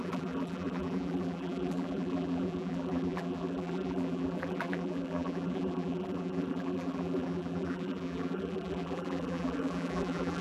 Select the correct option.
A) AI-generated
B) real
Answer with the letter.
A